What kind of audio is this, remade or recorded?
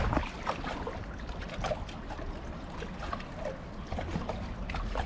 recorded